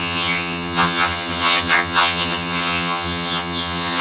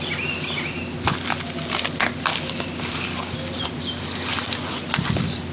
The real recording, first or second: second